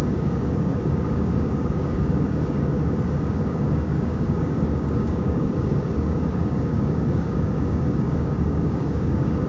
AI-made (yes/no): yes